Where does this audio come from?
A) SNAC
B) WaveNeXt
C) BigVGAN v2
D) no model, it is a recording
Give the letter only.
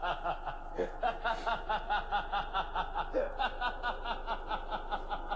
D